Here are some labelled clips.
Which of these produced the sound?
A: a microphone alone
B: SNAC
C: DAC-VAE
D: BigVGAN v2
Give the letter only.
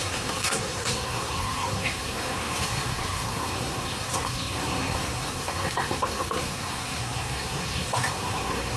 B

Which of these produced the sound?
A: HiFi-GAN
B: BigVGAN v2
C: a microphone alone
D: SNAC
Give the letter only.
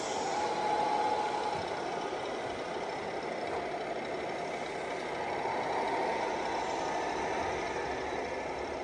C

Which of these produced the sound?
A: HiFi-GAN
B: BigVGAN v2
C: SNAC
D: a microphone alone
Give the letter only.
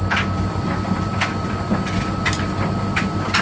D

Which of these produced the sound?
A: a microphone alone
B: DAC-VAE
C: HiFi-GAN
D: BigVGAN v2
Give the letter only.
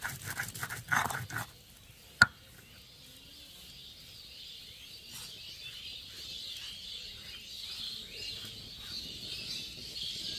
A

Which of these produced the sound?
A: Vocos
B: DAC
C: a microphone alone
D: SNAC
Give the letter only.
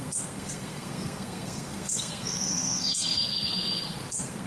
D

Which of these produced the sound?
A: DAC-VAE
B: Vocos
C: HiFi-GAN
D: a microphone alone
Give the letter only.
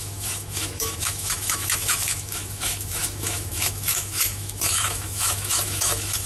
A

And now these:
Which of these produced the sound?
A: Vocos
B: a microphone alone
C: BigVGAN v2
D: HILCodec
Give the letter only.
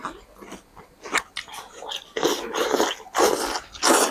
B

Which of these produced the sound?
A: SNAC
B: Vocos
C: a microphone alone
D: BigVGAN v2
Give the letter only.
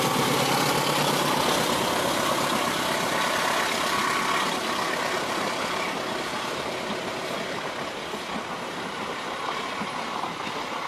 C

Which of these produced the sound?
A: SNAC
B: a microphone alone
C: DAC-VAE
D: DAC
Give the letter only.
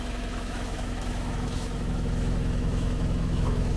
C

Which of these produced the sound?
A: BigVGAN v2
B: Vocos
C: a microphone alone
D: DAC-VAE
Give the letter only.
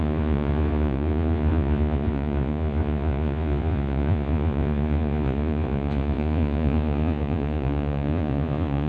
B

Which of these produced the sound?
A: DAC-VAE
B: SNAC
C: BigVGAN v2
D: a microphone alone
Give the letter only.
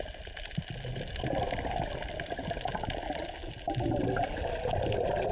D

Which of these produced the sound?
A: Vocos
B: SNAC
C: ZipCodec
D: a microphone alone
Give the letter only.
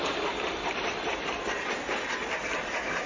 D